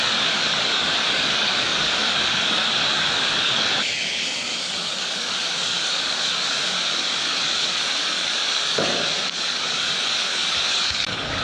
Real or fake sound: fake